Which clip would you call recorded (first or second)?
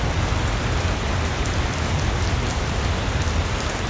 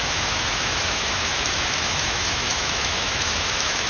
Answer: first